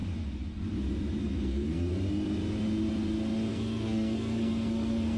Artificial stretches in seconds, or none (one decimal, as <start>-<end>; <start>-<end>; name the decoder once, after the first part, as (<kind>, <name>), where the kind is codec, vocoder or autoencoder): 1.2-1.9 (codec, SNAC); 3.5-5.2